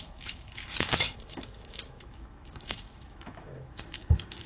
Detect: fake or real fake